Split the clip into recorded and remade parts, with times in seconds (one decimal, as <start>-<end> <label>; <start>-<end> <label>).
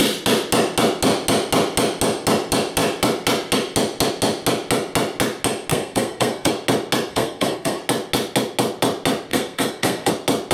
0.0-5.7 recorded; 5.7-6.5 remade; 6.5-7.1 recorded; 7.1-7.8 remade; 7.8-9.3 recorded; 9.3-10.1 remade; 10.1-10.5 recorded